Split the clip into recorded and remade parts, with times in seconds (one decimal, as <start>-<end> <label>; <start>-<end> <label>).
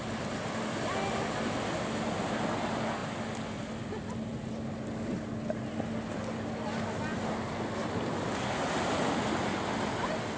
0.0-10.4 recorded